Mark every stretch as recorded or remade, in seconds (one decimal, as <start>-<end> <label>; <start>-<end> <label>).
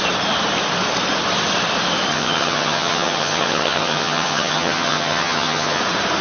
0.0-2.1 recorded; 2.1-5.8 remade; 5.8-6.2 recorded